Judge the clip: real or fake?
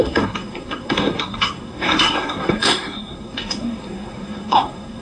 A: fake